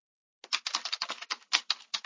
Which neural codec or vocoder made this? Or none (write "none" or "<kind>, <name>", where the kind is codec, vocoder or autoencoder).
none